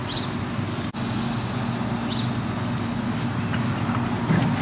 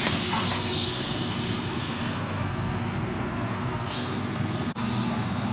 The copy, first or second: second